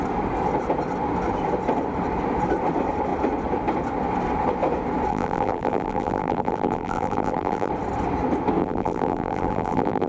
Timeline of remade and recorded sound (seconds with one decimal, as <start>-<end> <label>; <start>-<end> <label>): 0.0-5.1 recorded; 5.1-7.7 remade; 7.7-8.6 recorded; 8.6-10.1 remade